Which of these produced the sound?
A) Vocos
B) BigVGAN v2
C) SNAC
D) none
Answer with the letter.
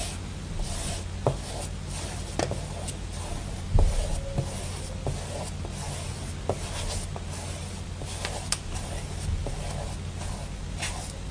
D